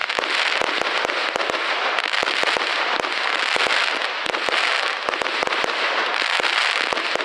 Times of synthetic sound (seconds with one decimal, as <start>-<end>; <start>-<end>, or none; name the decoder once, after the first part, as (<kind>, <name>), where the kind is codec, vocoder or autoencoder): none